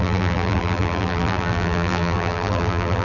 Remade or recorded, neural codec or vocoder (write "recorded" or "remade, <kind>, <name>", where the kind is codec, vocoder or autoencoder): remade, vocoder, BigVGAN v2